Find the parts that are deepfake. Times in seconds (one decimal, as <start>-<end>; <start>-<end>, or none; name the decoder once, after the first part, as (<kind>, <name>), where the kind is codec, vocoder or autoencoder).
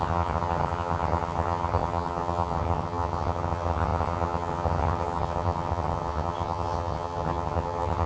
0.0-8.1 (vocoder, HiFi-GAN)